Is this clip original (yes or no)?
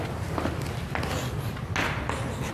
yes